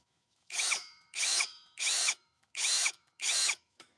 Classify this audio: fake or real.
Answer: fake